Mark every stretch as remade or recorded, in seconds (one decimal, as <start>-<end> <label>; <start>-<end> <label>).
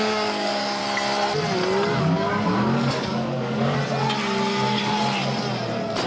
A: 0.0-0.8 remade; 0.8-2.0 recorded; 2.0-3.8 remade; 3.8-6.1 recorded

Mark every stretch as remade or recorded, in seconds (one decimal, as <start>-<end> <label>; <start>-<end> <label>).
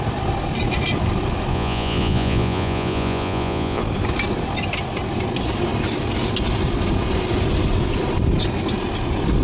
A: 0.0-1.5 recorded; 1.5-3.8 remade; 3.8-9.4 recorded